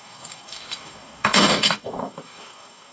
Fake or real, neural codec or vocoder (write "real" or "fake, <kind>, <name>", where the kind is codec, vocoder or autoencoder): fake, codec, DAC